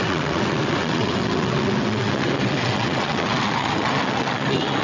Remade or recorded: remade